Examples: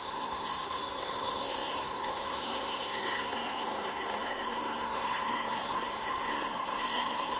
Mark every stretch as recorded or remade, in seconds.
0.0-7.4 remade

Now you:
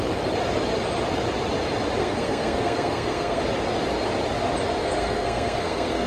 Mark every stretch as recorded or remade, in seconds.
0.0-2.0 recorded; 2.0-3.4 remade; 3.4-4.8 recorded; 4.8-6.1 remade

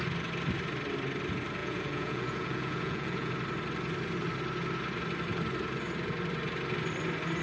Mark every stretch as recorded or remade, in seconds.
0.0-1.6 recorded; 1.6-3.3 remade; 3.3-7.4 recorded

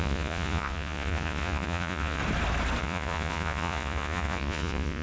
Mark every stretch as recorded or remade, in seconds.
0.0-2.2 remade; 2.2-2.8 recorded; 2.8-5.0 remade

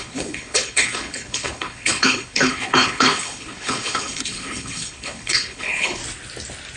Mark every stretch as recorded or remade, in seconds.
0.0-6.0 remade; 6.0-6.8 recorded

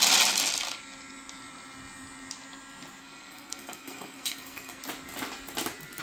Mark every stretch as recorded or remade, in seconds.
0.0-3.0 recorded; 3.0-4.8 remade; 4.8-6.0 recorded

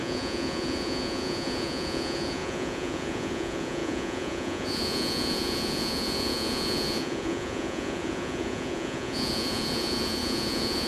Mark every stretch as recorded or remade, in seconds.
0.0-10.9 remade